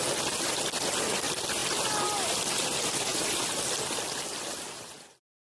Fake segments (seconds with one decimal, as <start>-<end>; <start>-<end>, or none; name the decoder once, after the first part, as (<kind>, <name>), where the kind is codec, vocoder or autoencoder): none